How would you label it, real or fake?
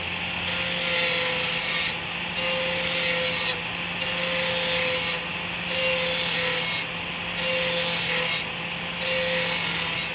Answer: real